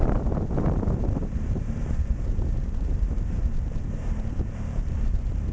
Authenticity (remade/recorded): remade